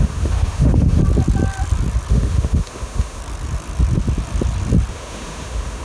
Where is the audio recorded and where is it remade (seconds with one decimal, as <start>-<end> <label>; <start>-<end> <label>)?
0.0-1.0 remade; 1.0-2.1 recorded; 2.1-3.2 remade; 3.2-4.9 recorded; 4.9-5.8 remade